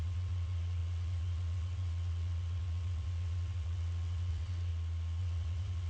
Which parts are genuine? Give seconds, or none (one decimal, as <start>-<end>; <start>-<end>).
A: 4.7-5.2